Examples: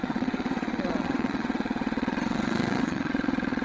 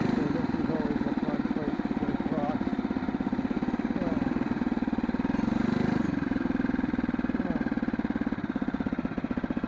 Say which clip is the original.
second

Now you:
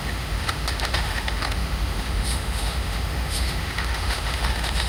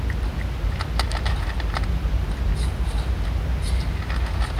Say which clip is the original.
second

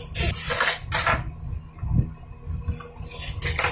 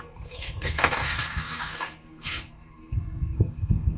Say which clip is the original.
first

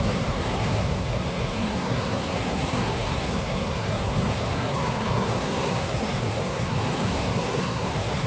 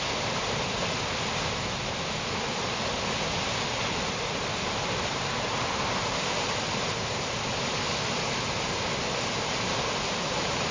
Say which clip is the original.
second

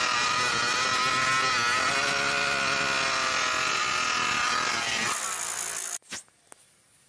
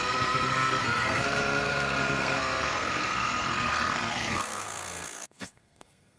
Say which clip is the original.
first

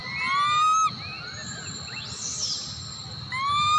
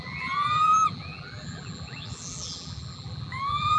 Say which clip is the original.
first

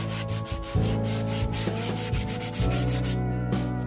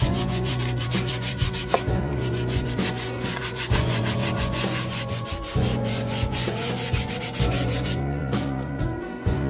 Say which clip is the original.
first